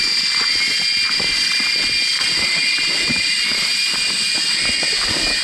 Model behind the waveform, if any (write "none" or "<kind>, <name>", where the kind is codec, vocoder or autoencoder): none